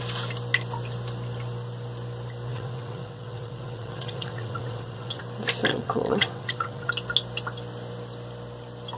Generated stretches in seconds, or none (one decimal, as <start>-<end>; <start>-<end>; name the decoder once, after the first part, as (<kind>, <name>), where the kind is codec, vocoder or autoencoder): 2.5-5.2 (vocoder, WaveNeXt); 5.7-6.9